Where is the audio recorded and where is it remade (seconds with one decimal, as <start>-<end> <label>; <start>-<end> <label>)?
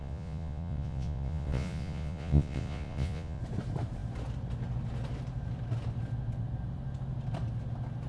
0.0-3.4 remade; 3.4-8.1 recorded